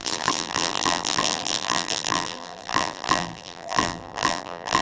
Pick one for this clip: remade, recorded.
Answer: remade